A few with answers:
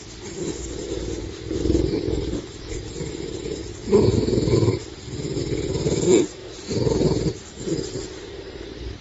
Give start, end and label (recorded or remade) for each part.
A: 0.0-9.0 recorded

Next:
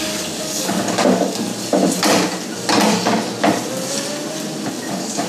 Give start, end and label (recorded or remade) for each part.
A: 0.0-1.5 remade; 1.5-4.7 recorded; 4.7-5.3 remade